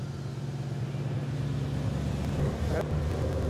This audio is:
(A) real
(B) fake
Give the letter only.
A